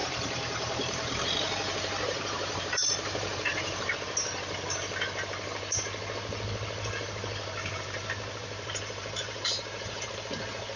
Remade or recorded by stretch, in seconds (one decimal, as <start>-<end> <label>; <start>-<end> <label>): 0.0-3.9 remade; 3.9-8.4 recorded; 8.4-10.1 remade; 10.1-10.8 recorded